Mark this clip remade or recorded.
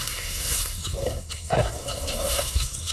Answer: remade